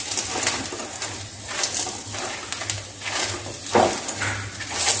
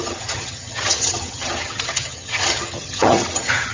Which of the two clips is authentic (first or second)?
first